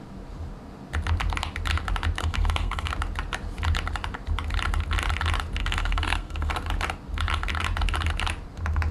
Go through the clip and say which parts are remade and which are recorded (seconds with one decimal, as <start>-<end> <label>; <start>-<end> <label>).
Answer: 0.0-2.2 recorded; 2.2-2.9 remade; 2.9-5.6 recorded; 5.6-6.5 remade; 6.5-8.9 recorded